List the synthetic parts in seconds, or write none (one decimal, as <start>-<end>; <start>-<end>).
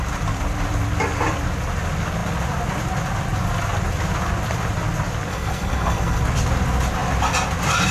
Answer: 5.3-6.2